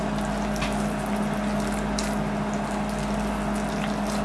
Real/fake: real